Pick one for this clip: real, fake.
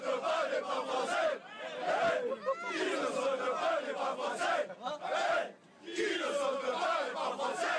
real